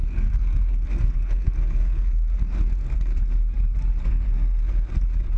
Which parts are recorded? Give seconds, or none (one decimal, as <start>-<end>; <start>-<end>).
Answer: 3.2-4.0; 4.9-5.4